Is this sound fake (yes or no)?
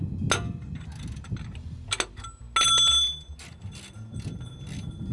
no